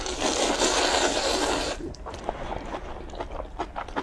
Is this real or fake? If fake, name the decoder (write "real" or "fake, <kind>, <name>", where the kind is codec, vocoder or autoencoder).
real